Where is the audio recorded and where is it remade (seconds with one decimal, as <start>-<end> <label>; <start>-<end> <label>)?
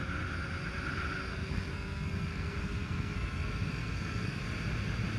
0.0-1.3 recorded; 1.3-4.4 remade; 4.4-5.2 recorded